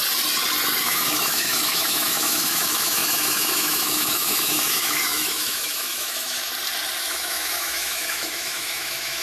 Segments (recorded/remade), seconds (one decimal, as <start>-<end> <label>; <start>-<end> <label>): 0.0-0.8 recorded; 0.8-6.5 remade; 6.5-7.0 recorded; 7.0-9.2 remade